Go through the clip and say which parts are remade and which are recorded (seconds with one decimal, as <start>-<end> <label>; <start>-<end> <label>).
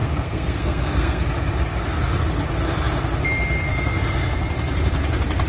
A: 0.0-1.2 remade; 1.2-3.7 recorded; 3.7-4.5 remade; 4.5-5.5 recorded